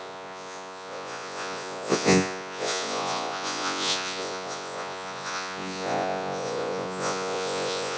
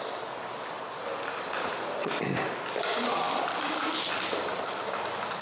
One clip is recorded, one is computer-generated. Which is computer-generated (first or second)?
first